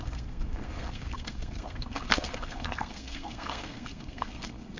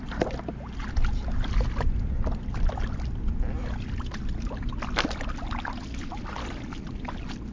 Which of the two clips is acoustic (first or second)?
second